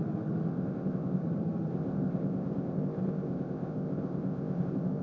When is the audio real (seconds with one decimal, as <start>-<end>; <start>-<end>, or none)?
0.0-0.5; 1.2-1.7